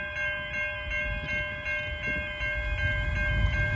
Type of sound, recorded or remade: recorded